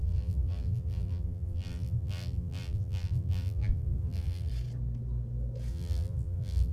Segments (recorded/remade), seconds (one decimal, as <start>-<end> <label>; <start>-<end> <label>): 0.0-4.5 remade; 4.5-5.7 recorded; 5.7-6.7 remade

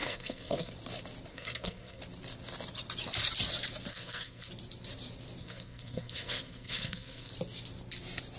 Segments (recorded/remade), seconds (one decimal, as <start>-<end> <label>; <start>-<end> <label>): 0.0-0.7 remade; 0.7-1.3 recorded; 1.3-2.0 remade; 2.0-3.9 recorded; 3.9-4.5 remade; 4.5-5.4 recorded; 5.4-7.3 remade; 7.3-8.4 recorded

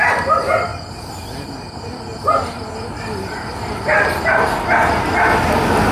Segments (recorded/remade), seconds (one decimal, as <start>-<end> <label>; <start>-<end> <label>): 0.0-5.9 recorded

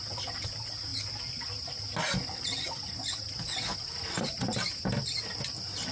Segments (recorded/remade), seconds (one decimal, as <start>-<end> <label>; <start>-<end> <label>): 0.0-5.9 recorded

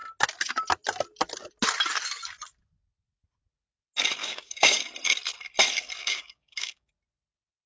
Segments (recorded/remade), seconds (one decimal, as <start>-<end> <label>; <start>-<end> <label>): 0.0-4.2 recorded; 4.2-4.8 remade; 4.8-6.0 recorded; 6.0-6.9 remade; 6.9-7.7 recorded

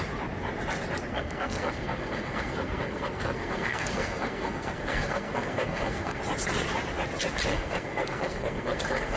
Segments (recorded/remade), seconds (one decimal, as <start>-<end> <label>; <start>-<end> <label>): 0.0-1.1 recorded; 1.1-6.2 remade; 6.2-7.5 recorded; 7.5-9.2 remade